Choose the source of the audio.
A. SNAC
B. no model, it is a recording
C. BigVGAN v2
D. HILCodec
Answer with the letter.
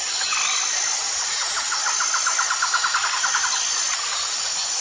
B